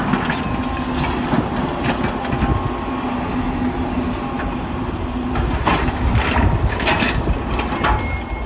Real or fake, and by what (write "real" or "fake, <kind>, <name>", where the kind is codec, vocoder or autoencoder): real